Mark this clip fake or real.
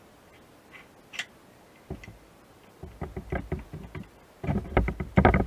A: real